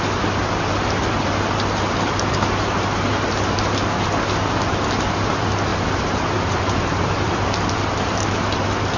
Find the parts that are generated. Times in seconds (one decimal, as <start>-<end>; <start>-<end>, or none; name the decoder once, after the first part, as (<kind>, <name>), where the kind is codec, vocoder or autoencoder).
5.7-7.8 (vocoder, BigVGAN v2)